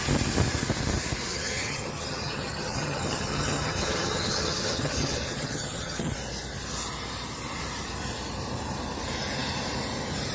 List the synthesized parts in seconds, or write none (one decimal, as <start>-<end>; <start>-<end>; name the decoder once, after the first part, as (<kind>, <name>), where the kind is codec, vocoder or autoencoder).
1.3-6.1 (vocoder, HiFi-GAN)